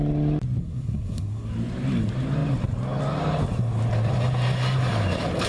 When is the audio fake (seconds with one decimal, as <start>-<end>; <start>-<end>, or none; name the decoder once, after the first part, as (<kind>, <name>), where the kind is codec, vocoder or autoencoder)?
0.6-1.5 (codec, SNAC)